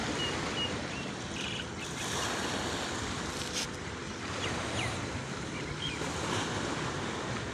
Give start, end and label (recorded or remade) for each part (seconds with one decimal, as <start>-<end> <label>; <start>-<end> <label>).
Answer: 0.0-7.5 recorded